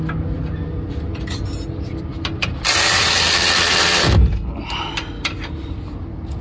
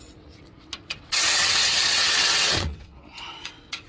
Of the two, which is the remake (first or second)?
second